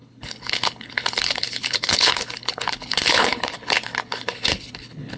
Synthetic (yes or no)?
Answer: yes